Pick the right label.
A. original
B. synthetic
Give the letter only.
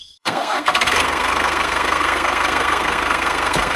B